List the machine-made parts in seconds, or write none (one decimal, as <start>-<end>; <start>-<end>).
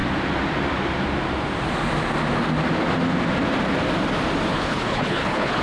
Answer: 4.5-5.6